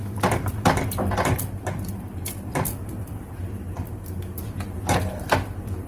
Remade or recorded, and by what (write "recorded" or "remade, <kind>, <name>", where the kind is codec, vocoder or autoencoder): remade, vocoder, BigVGAN v2